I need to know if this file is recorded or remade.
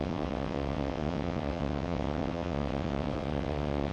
remade